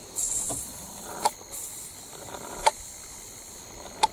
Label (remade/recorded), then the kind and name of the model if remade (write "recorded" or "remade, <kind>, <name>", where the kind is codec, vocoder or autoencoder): recorded